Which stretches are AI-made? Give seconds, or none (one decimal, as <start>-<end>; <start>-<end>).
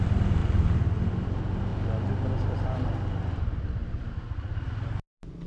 none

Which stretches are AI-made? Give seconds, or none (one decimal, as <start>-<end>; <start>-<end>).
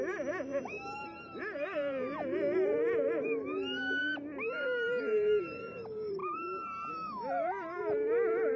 0.0-4.0; 5.0-8.6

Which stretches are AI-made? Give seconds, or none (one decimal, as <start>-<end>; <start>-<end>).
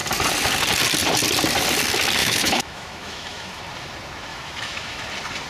2.2-3.6; 4.3-5.0